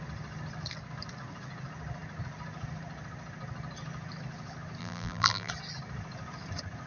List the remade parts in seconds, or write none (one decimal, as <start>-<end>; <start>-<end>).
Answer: 4.8-5.5